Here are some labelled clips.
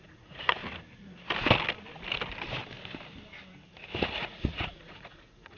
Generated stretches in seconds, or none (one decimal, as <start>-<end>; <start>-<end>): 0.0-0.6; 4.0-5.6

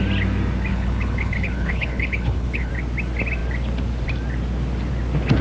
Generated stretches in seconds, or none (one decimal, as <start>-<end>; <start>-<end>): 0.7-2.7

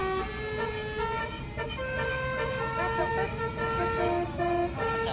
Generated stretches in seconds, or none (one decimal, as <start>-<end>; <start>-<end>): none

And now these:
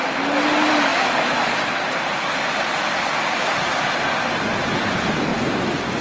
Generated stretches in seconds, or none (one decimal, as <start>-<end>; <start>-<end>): none

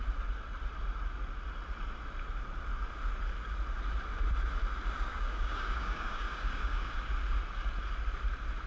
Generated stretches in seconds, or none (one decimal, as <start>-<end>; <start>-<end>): 5.1-7.0